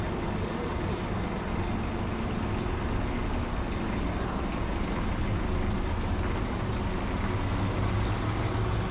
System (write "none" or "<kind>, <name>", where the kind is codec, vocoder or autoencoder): none